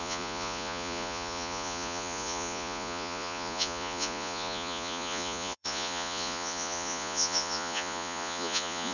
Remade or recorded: remade